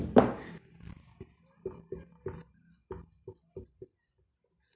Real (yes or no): yes